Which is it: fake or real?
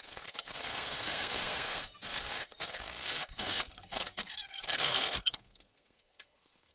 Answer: fake